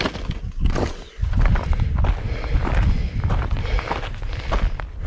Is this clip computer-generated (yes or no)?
no